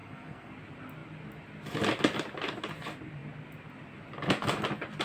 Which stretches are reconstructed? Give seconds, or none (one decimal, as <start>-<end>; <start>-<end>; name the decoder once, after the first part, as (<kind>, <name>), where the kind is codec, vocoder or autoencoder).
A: 0.0-0.5 (codec, SNAC)